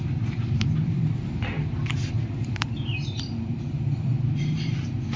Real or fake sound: fake